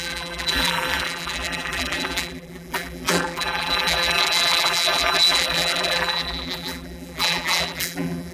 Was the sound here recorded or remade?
remade